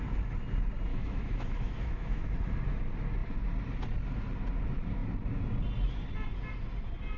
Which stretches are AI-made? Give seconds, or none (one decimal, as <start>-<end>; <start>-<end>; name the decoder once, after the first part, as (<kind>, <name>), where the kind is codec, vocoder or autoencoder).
0.9-2.3 (autoencoder, DAC-VAE)